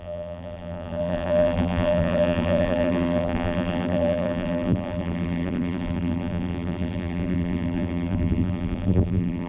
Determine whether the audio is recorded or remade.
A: remade